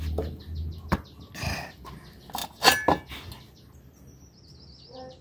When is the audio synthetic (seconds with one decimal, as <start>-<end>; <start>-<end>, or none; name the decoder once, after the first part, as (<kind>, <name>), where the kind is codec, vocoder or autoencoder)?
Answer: none